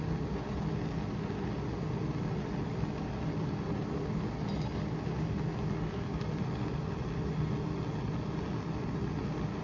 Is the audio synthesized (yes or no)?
no